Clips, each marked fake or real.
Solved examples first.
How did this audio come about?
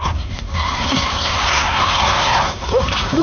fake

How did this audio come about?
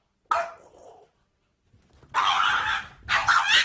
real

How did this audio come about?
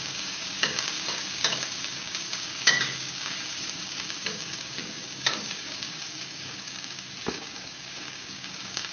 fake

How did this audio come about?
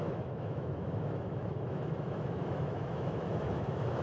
fake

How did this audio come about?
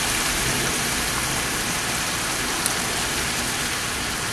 real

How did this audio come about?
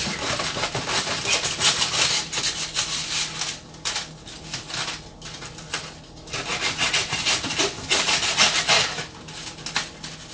real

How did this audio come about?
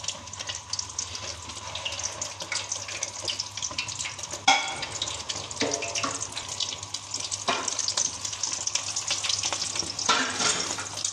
real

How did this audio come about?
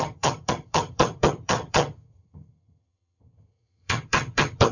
fake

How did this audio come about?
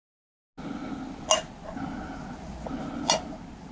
real